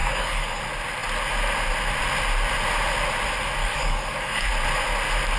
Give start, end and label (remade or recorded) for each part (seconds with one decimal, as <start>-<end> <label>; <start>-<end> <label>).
0.0-0.6 remade; 0.6-3.6 recorded; 3.6-4.5 remade; 4.5-5.4 recorded